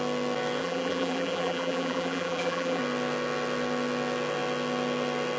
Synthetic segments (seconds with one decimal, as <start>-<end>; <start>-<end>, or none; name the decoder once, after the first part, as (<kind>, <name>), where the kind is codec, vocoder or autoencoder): 0.6-2.8 (vocoder, BigVGAN v2)